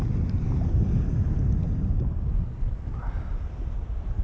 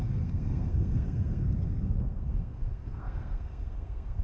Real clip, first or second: first